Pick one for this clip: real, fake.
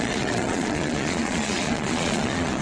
fake